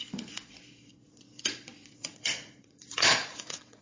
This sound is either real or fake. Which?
fake